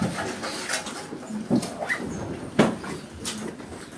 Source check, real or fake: real